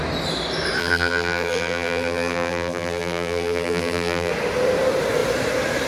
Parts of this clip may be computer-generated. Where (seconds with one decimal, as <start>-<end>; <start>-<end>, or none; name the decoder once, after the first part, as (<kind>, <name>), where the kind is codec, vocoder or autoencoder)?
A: 0.8-4.3 (vocoder, BigVGAN v2)